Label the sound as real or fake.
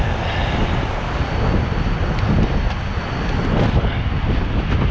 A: real